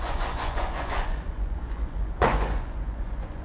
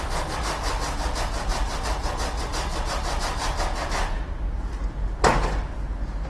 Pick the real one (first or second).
second